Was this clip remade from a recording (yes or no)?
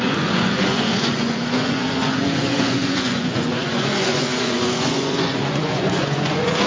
yes